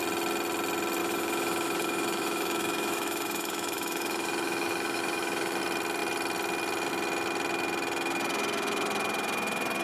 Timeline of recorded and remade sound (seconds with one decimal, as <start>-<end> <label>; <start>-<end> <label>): 0.0-1.0 recorded; 1.0-5.6 remade; 5.6-9.8 recorded